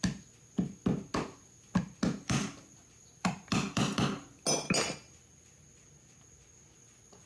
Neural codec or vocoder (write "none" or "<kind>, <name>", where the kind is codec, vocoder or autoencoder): none